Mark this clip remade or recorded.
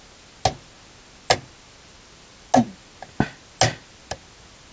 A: recorded